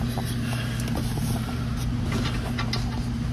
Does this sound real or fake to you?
real